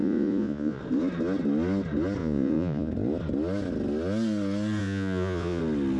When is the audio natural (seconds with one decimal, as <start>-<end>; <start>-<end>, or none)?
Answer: 0.8-2.2; 2.9-4.8; 5.6-6.0